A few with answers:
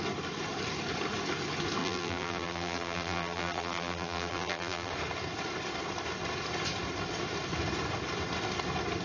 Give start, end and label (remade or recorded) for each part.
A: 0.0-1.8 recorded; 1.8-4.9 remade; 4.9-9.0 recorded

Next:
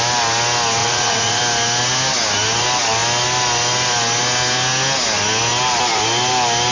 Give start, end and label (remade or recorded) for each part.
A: 0.0-0.8 recorded; 0.8-1.4 remade; 1.4-6.7 recorded

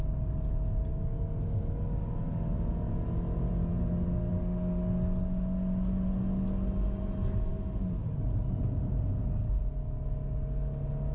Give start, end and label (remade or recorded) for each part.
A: 0.0-11.1 recorded